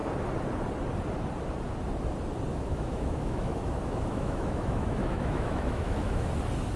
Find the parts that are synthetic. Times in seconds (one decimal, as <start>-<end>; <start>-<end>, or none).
2.5-6.3